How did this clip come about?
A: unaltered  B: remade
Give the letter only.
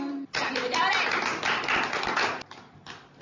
A